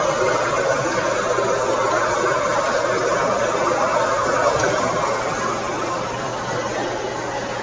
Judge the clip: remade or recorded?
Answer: recorded